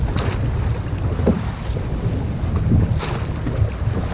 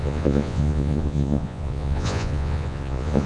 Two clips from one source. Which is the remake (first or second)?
second